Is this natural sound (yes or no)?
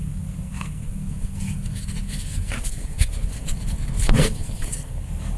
no